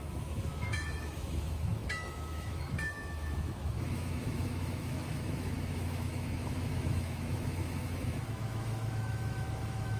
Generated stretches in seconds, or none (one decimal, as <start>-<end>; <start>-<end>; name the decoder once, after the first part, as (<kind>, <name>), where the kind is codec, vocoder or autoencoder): 0.0-10.0 (autoencoder, DAC-VAE)